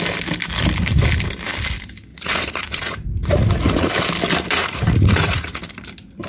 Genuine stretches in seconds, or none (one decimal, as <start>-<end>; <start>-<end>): 0.0-2.1; 3.9-4.6; 5.6-6.3